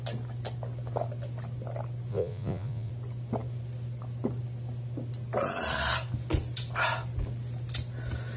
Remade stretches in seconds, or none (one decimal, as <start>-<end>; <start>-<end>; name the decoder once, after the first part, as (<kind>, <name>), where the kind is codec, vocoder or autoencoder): 2.1-2.9 (vocoder, Vocos)